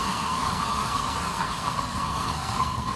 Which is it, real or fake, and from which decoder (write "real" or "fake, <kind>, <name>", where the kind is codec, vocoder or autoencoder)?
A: fake, codec, SNAC